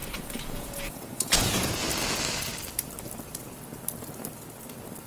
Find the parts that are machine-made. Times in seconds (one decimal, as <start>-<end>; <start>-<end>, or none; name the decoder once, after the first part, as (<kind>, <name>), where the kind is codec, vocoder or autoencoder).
0.0-1.8 (vocoder, Vocos)